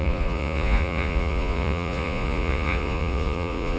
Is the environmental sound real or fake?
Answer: fake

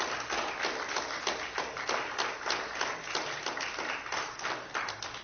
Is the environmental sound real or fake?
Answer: real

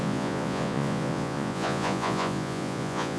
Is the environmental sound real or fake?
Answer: fake